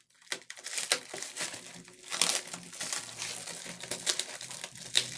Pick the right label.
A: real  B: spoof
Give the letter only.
A